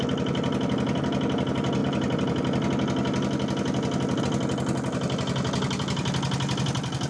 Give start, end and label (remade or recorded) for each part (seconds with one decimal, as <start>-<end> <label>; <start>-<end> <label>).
0.0-7.1 recorded